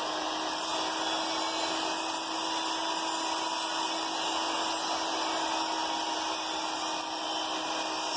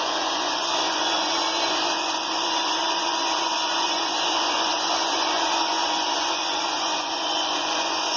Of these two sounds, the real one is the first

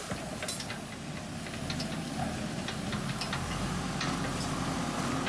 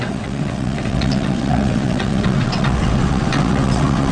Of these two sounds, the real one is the first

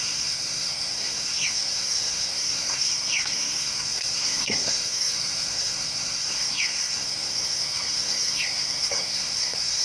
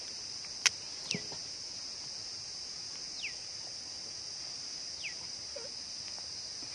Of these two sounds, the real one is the second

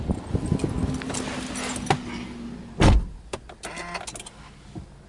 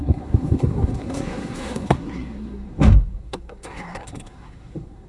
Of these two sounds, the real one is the first